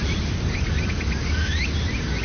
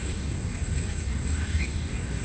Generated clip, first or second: second